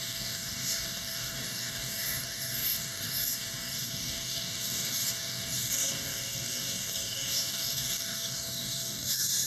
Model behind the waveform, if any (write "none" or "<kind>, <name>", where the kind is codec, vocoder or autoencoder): codec, DAC